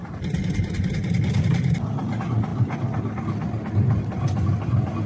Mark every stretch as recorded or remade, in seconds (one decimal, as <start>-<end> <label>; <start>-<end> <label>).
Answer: 0.0-5.1 recorded